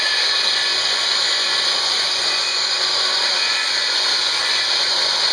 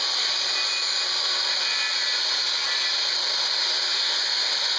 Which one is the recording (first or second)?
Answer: second